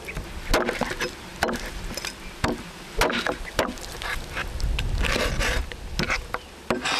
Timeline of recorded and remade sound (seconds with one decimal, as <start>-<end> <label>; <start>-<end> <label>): 0.0-7.0 recorded